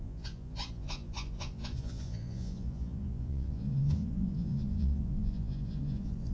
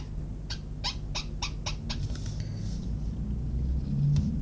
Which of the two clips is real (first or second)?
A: second